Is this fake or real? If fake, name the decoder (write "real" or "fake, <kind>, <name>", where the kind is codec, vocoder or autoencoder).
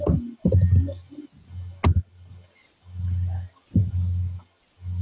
real